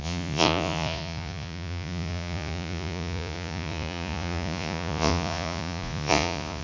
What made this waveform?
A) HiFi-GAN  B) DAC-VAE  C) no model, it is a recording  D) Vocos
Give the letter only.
D